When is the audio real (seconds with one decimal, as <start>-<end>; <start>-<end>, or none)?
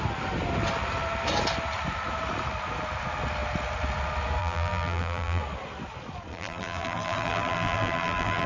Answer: 0.0-4.4; 5.4-6.3